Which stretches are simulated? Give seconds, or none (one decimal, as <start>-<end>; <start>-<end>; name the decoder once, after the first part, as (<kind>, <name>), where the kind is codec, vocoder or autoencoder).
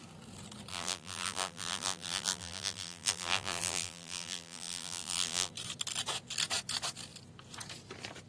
0.7-5.5 (vocoder, BigVGAN v2)